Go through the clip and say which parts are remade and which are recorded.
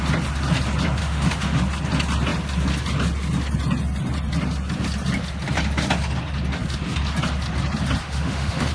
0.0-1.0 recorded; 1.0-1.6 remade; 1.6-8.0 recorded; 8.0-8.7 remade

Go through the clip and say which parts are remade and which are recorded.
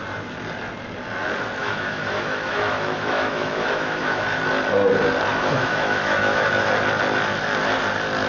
0.0-1.6 recorded; 1.6-4.4 remade; 4.4-5.3 recorded; 5.3-6.7 remade; 6.7-8.3 recorded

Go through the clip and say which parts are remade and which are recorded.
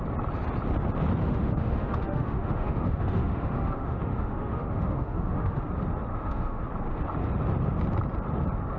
0.0-1.2 recorded; 1.2-5.6 remade; 5.6-6.1 recorded; 6.1-6.6 remade; 6.6-8.8 recorded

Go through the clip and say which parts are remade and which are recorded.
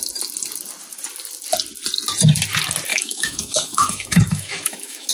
0.0-2.9 recorded; 2.9-5.1 remade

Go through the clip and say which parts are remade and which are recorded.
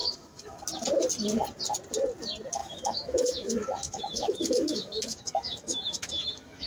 0.0-0.6 remade; 0.6-2.6 recorded; 2.6-6.7 remade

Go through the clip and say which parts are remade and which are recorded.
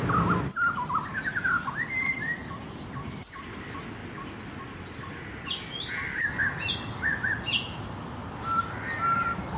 0.0-9.6 recorded